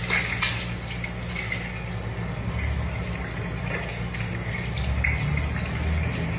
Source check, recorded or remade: recorded